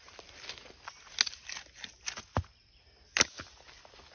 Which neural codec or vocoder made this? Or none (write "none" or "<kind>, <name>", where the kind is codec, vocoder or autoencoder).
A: none